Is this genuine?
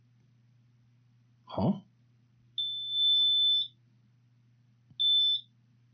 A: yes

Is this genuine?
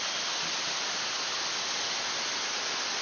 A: yes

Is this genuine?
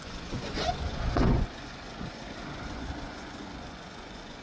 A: no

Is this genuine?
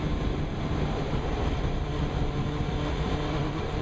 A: yes